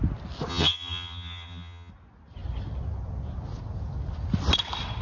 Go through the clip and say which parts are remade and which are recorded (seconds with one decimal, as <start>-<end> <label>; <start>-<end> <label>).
0.0-0.5 recorded; 0.5-1.9 remade; 1.9-5.0 recorded